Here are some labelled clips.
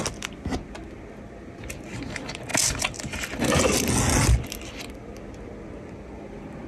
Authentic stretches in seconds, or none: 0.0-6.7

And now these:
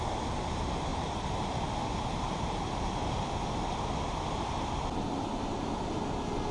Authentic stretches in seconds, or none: 0.0-0.9; 1.5-6.5

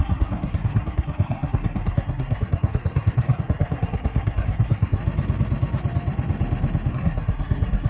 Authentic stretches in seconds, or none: 5.0-6.9

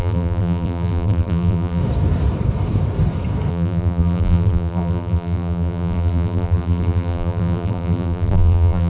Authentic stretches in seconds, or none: 1.8-3.5

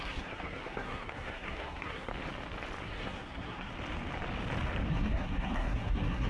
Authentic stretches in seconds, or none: 2.1-2.8; 3.7-4.9

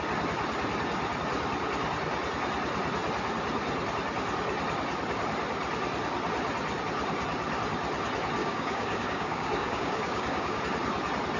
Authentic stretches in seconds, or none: 0.0-8.4; 10.6-11.4

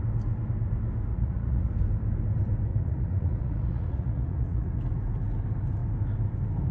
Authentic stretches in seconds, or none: 0.0-1.1; 1.7-2.7; 4.8-6.7